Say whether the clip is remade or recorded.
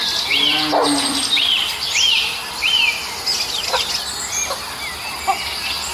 recorded